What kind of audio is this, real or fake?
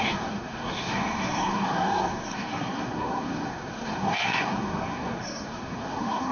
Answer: fake